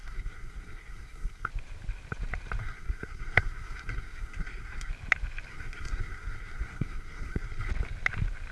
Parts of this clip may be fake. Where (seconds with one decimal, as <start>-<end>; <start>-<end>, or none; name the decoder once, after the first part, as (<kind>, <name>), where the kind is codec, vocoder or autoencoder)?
0.0-1.5 (codec, SNAC); 2.6-4.9; 5.5-7.7